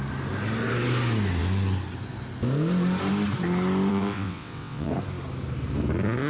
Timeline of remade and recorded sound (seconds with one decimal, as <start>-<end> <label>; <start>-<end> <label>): 0.0-3.9 recorded; 3.9-4.9 remade; 4.9-6.3 recorded